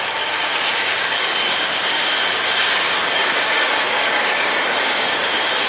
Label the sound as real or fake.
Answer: fake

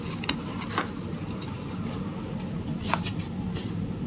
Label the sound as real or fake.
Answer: real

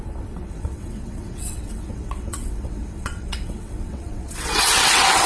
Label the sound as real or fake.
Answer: fake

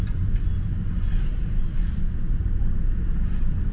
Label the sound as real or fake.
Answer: real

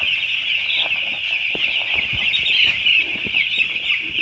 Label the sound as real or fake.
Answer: real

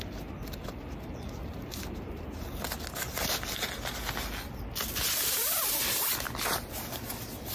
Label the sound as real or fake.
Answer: real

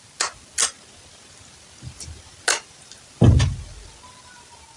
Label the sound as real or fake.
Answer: real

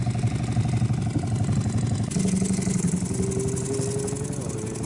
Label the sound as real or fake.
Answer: real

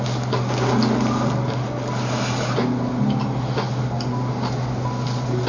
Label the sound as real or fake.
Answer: real